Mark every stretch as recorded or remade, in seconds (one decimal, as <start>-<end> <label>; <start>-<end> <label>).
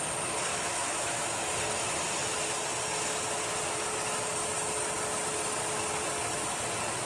0.0-0.5 recorded; 0.5-1.4 remade; 1.4-7.1 recorded